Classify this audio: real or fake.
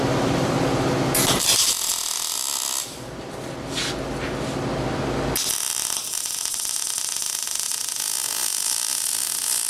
real